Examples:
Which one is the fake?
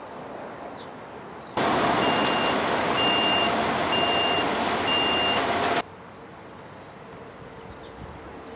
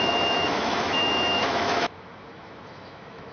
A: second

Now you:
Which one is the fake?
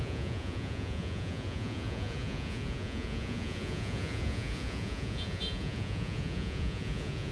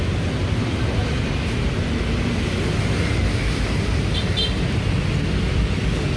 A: first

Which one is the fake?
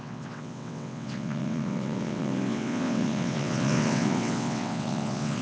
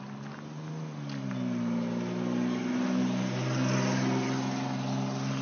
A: first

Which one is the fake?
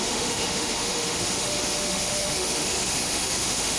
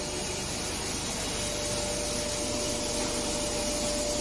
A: first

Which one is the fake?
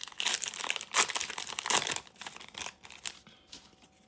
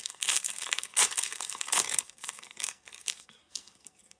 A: second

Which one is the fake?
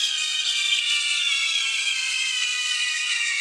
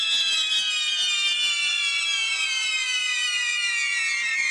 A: first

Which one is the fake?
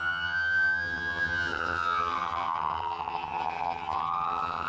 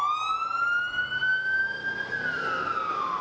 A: first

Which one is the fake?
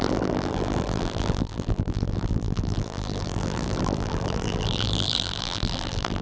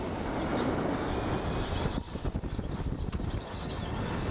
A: first